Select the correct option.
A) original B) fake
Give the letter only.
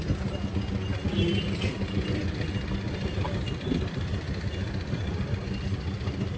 A